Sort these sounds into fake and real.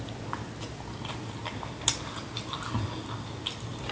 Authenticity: real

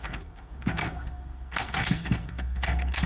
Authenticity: fake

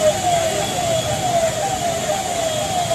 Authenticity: real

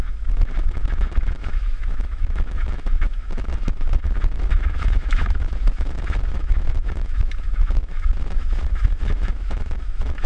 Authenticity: fake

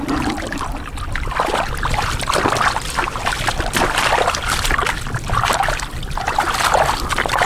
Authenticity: real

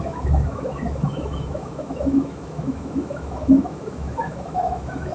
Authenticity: fake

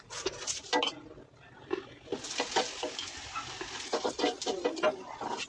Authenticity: real